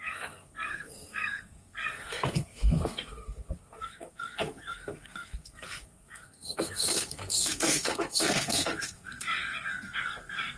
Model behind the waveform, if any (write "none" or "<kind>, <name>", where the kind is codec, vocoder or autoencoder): codec, SNAC